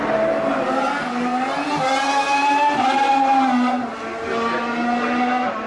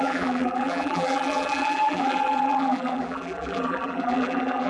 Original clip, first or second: first